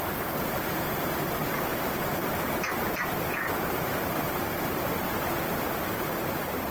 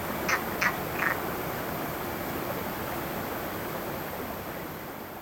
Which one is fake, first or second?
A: first